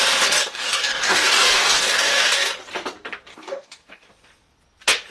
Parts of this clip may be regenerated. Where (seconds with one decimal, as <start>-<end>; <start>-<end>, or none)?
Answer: 0.4-2.5; 3.3-4.1